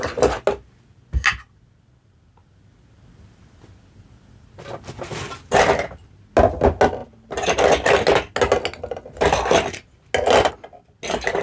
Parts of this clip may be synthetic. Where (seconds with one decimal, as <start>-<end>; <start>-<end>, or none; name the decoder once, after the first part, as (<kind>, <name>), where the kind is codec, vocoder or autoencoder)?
none